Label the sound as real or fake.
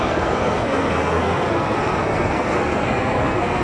fake